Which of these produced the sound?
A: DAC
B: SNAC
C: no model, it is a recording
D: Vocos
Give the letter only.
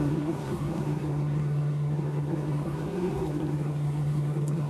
B